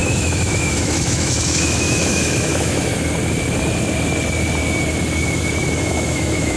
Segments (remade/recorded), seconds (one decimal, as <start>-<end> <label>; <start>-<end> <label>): 0.0-2.9 remade; 2.9-5.8 recorded; 5.8-6.6 remade

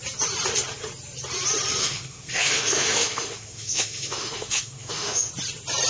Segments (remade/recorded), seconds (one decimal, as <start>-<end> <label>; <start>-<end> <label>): 0.0-1.8 recorded; 1.8-5.3 remade; 5.3-5.9 recorded

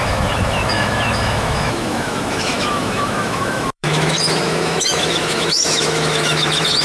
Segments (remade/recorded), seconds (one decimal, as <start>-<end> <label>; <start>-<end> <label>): 0.0-6.8 remade

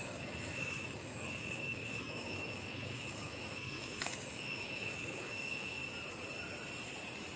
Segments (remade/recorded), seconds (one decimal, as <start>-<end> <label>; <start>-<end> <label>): 0.0-5.8 remade; 5.8-7.4 recorded

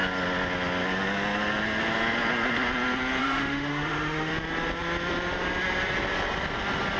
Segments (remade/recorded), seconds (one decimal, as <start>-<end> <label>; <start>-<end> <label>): 0.0-3.2 recorded; 3.2-4.3 remade; 4.3-7.0 recorded

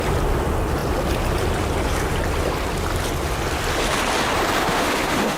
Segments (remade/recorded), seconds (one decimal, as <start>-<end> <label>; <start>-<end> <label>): 0.0-4.6 recorded; 4.6-5.4 remade

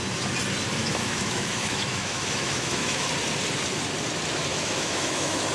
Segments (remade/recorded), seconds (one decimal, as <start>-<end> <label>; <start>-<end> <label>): 0.0-0.8 recorded; 0.8-3.1 remade; 3.1-4.5 recorded; 4.5-5.5 remade

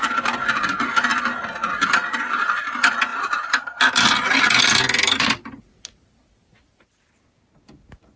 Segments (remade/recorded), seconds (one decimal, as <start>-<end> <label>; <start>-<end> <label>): 0.0-8.2 recorded